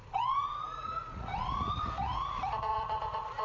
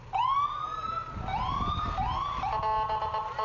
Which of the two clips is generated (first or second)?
first